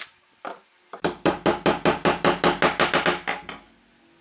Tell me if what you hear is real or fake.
real